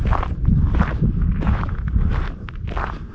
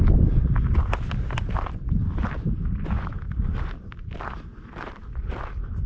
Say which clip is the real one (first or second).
first